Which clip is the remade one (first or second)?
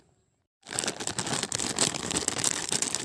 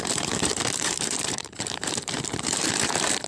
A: second